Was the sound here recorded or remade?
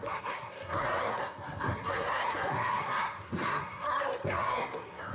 remade